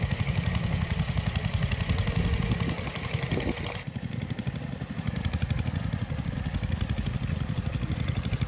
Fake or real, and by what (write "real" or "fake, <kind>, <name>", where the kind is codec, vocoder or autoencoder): real